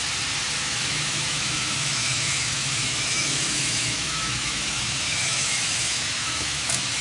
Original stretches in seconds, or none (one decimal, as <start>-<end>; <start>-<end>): 0.0-0.6